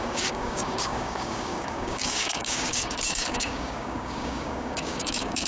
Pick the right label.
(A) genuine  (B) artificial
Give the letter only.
B